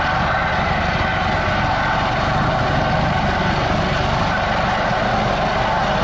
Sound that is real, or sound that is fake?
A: real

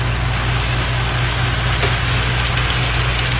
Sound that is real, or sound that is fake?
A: real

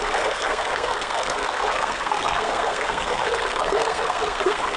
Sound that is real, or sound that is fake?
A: fake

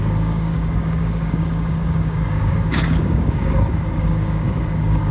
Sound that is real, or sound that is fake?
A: fake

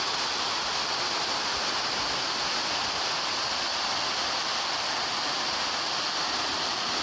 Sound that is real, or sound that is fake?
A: real